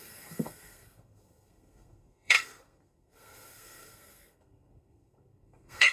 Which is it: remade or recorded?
remade